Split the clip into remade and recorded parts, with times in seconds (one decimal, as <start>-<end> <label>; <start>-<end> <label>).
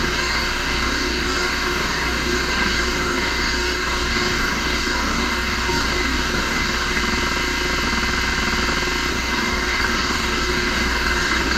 0.0-7.0 remade; 7.0-9.1 recorded; 9.1-11.6 remade